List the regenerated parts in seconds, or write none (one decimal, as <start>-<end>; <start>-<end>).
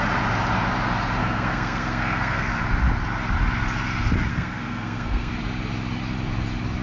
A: 1.2-2.6; 4.3-5.3